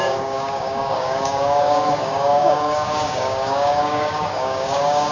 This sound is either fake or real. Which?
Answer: fake